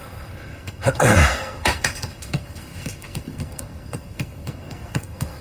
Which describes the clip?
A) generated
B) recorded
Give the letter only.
A